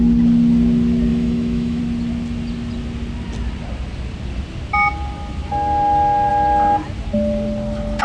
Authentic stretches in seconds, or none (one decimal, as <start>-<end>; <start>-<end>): 0.0-1.1; 1.8-8.0